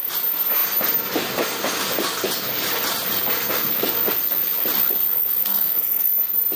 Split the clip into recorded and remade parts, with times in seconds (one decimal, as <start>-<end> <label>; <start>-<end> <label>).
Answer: 0.0-5.4 recorded; 5.4-6.1 remade; 6.1-6.6 recorded

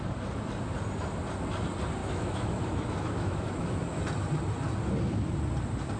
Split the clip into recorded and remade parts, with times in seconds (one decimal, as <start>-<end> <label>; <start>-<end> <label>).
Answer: 0.0-2.0 recorded; 2.0-4.0 remade; 4.0-6.0 recorded

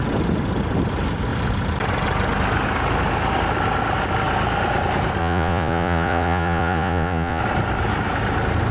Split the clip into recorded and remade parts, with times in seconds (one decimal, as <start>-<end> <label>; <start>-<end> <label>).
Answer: 0.0-5.2 recorded; 5.2-7.4 remade; 7.4-8.7 recorded

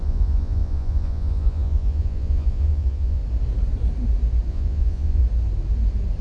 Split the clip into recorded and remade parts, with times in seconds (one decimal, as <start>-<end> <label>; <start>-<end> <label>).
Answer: 0.0-3.2 remade; 3.2-4.5 recorded; 4.5-5.2 remade; 5.2-6.2 recorded